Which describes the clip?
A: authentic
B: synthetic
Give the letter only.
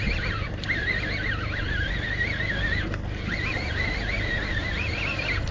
A